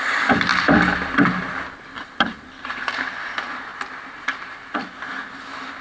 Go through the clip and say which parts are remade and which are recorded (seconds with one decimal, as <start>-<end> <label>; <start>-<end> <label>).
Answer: 0.0-5.8 recorded

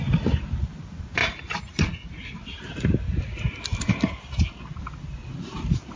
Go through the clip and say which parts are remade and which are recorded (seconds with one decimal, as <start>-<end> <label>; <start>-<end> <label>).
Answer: 0.0-6.0 recorded

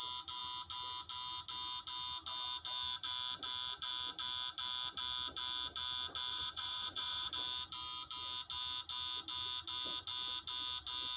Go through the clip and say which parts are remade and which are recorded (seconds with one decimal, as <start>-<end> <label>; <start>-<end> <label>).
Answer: 0.0-6.3 recorded; 6.3-7.3 remade; 7.3-11.2 recorded

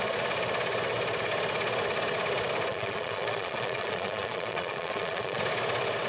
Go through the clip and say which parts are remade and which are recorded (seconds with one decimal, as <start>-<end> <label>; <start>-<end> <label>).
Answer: 0.0-2.7 recorded; 2.7-5.4 remade; 5.4-6.1 recorded

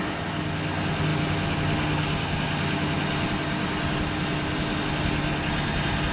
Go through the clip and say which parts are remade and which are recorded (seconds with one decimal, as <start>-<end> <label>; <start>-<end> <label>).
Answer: 0.0-6.1 recorded

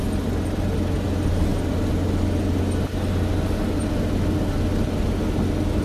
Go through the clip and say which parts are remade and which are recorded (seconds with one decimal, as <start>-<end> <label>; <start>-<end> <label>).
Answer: 0.0-5.8 recorded

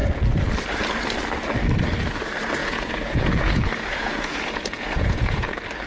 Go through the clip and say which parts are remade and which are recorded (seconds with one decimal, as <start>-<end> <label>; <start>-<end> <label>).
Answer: 0.0-2.6 recorded; 2.6-5.5 remade; 5.5-5.9 recorded

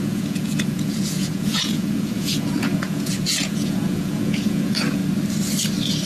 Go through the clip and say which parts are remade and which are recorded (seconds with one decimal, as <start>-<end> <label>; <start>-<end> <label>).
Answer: 0.0-5.0 remade; 5.0-6.1 recorded